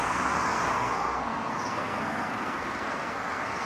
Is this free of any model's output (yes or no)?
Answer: no